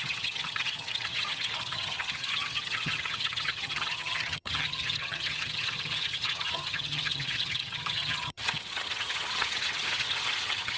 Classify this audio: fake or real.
fake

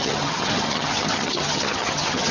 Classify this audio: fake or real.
fake